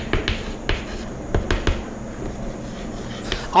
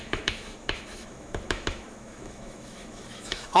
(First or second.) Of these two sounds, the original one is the first